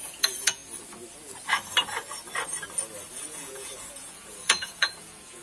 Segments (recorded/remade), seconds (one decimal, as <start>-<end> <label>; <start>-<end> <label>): 0.0-0.6 remade; 0.6-3.1 recorded; 3.1-5.4 remade